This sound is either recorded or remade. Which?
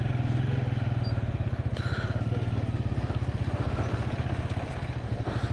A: recorded